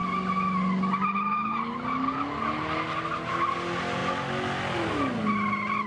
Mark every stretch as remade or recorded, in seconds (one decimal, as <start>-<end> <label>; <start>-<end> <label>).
0.0-5.9 recorded